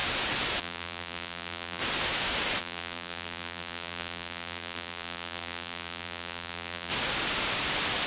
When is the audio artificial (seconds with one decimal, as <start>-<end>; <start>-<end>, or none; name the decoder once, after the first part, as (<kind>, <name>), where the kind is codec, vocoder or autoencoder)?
0.6-1.8 (vocoder, BigVGAN v2); 2.6-6.9